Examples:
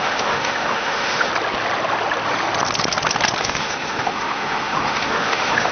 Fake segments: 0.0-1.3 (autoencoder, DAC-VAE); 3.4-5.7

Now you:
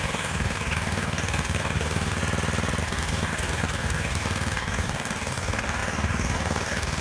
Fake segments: 0.0-2.2 (codec, DAC); 2.8-7.0